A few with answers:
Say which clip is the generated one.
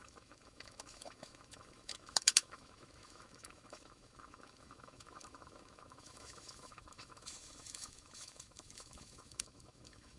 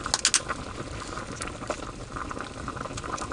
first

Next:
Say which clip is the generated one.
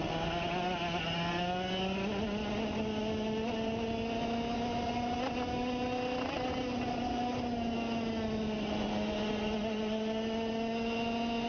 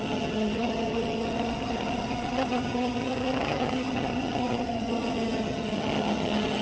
second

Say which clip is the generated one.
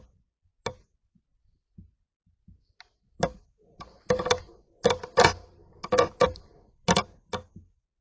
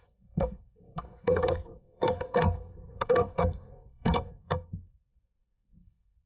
second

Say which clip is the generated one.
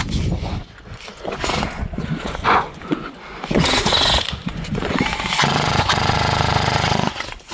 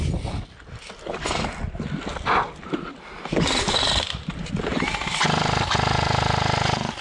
first